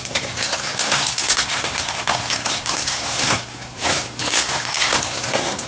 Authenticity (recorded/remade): remade